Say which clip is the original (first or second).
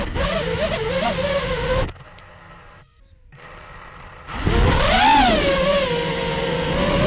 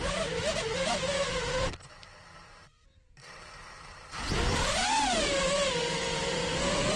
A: first